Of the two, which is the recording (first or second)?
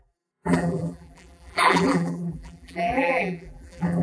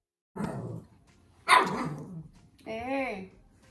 second